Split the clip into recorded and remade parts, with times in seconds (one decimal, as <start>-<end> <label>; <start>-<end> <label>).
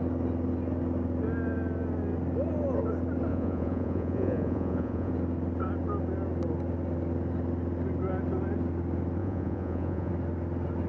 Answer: 0.0-3.3 recorded; 3.3-5.1 remade; 5.1-9.2 recorded; 9.2-10.1 remade; 10.1-10.9 recorded